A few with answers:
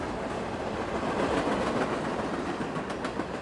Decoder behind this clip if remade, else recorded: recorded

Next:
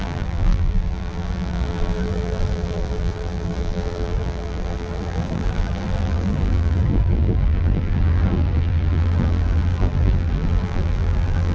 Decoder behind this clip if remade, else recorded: remade, vocoder, BigVGAN v2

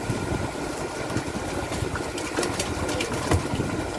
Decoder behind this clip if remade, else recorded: recorded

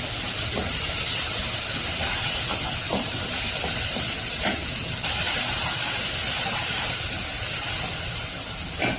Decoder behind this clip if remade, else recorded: recorded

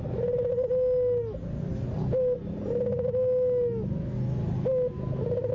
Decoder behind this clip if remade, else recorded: recorded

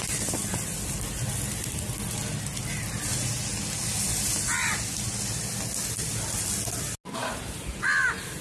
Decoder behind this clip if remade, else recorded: recorded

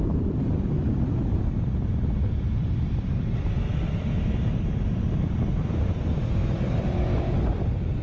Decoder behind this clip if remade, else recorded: remade, vocoder, BigVGAN v2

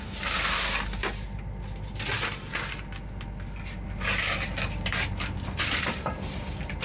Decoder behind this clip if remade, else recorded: recorded